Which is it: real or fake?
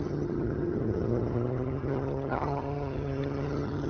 fake